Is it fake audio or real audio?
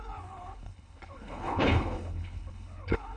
fake